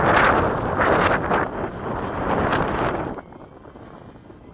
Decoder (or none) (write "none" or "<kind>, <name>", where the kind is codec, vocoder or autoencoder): none